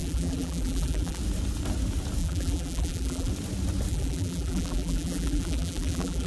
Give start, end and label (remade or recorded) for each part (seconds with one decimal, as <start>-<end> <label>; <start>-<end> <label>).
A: 0.0-1.2 remade; 1.2-2.2 recorded; 2.2-3.3 remade; 3.3-3.9 recorded; 3.9-6.3 remade